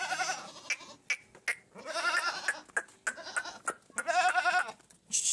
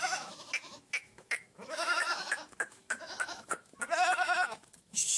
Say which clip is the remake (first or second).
second